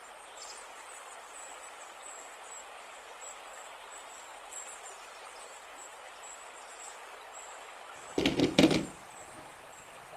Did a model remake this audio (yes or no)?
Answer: no